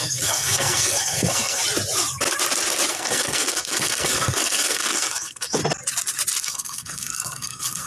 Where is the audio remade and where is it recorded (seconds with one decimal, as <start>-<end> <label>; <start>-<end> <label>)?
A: 0.0-1.6 remade; 1.6-2.9 recorded; 2.9-5.6 remade; 5.6-6.4 recorded; 6.4-7.9 remade